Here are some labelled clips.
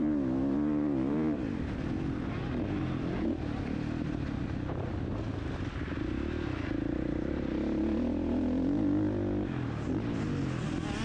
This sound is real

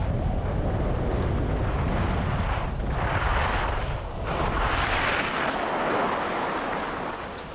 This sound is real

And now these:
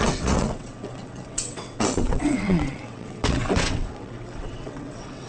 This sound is fake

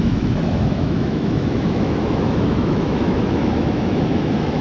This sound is fake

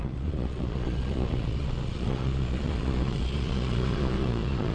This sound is fake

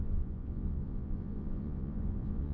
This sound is fake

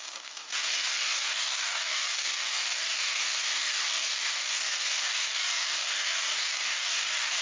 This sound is fake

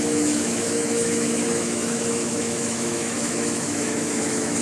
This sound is fake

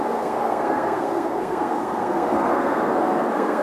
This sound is fake